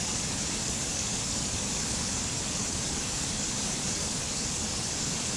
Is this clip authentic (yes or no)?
no